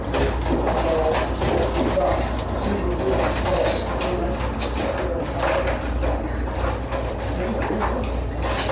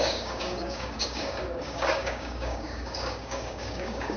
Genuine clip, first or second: first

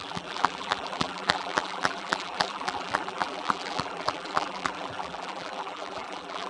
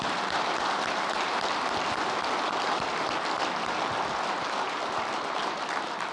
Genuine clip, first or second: second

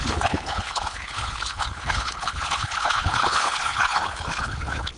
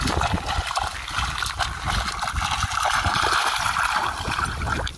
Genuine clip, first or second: second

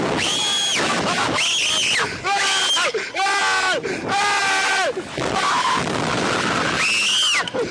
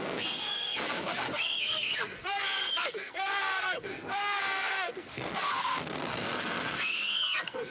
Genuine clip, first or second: first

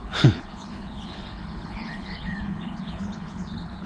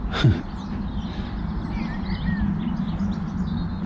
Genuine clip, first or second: second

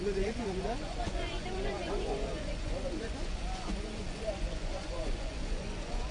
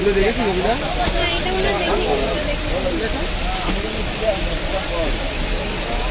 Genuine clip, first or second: second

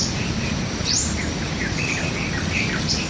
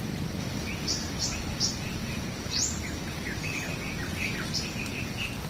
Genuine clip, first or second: second